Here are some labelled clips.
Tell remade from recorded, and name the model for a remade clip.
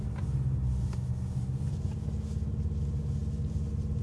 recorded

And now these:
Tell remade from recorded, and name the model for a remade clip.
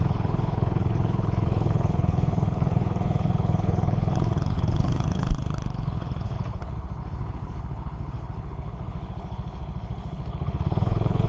remade, codec, HILCodec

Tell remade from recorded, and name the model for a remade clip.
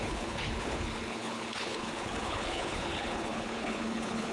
remade, codec, HILCodec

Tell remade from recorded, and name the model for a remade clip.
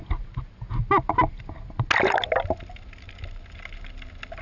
recorded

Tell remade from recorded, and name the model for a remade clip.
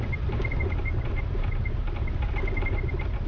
recorded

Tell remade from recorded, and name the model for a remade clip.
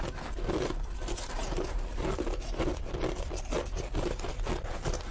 recorded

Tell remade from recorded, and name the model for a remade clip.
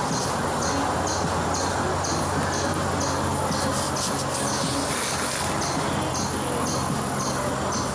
recorded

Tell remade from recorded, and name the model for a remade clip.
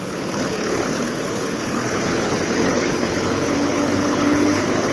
remade, codec, HILCodec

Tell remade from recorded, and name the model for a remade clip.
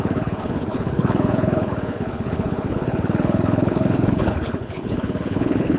remade, codec, HILCodec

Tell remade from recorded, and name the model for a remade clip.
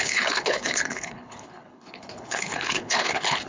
remade, codec, HILCodec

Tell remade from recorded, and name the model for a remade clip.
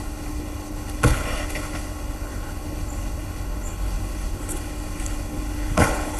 remade, codec, HILCodec